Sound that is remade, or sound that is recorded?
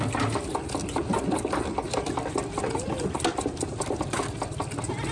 recorded